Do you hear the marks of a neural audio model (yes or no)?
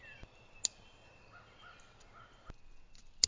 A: no